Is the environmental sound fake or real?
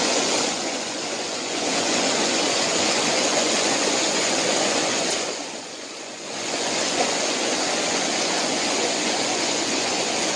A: fake